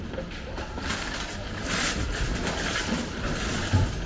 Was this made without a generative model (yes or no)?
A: no